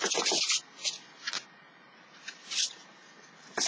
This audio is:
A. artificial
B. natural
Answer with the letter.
B